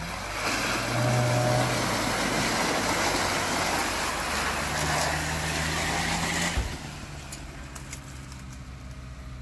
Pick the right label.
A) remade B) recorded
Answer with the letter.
B